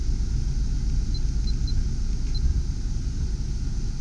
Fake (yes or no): no